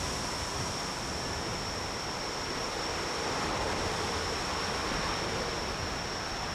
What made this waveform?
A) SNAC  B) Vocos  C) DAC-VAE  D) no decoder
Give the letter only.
D